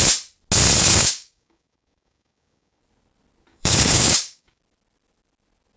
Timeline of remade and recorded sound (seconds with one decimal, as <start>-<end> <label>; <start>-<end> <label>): 0.0-1.0 recorded; 1.0-2.8 remade; 2.8-3.5 recorded; 3.5-4.6 remade; 4.6-5.8 recorded